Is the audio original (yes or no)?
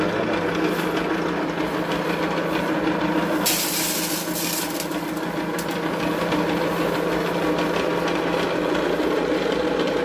yes